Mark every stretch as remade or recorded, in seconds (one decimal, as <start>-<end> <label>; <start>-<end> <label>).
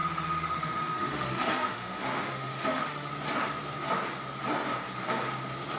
0.0-3.1 remade; 3.1-5.8 recorded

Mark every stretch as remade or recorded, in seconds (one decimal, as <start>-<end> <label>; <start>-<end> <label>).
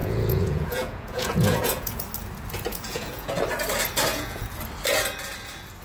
0.0-2.0 remade; 2.0-2.7 recorded; 2.7-3.4 remade; 3.4-4.1 recorded; 4.1-4.6 remade; 4.6-5.8 recorded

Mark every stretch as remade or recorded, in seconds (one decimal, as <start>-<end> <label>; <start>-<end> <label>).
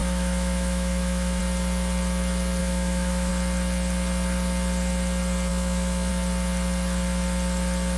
0.0-1.4 remade; 1.4-2.6 recorded; 2.6-3.3 remade; 3.3-5.5 recorded; 5.5-6.1 remade; 6.1-8.0 recorded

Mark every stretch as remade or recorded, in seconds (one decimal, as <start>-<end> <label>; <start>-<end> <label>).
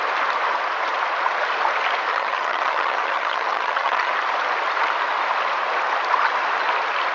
0.0-2.1 recorded; 2.1-4.1 remade; 4.1-7.1 recorded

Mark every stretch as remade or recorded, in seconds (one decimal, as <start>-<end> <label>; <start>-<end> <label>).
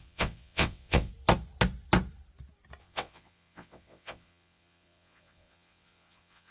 0.0-1.1 remade; 1.1-2.8 recorded; 2.8-6.5 remade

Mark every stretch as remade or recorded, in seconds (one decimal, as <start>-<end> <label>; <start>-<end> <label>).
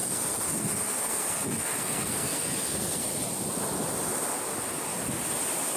0.0-3.1 remade; 3.1-5.8 recorded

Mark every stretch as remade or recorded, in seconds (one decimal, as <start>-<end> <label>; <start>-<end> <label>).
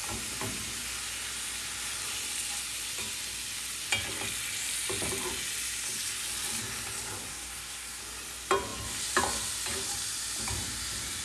0.0-7.3 recorded; 7.3-8.0 remade; 8.0-11.2 recorded